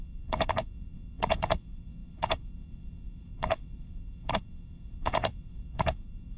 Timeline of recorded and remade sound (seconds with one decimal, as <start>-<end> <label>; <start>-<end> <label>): 0.0-6.4 remade